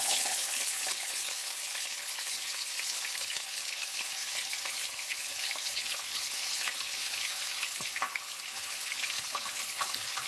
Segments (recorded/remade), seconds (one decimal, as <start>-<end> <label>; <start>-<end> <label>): 0.0-10.3 remade